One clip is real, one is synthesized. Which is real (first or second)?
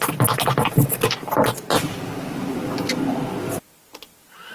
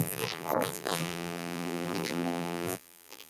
first